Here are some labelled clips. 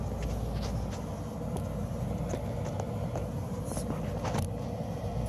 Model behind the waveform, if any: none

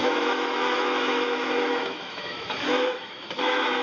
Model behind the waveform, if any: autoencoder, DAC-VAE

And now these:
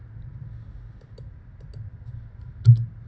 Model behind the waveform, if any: none